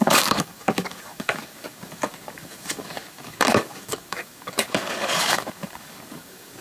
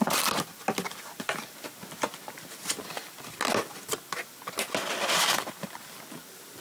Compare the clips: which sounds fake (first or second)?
first